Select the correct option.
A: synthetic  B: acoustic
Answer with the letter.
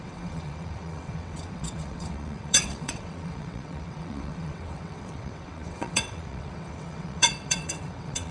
A